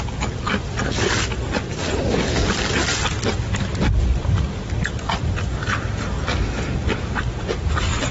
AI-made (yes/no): no